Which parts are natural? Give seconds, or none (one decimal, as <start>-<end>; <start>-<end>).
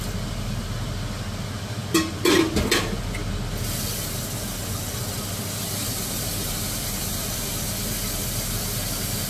0.0-5.8; 7.8-9.3